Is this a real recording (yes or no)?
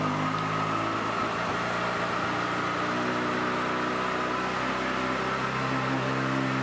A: yes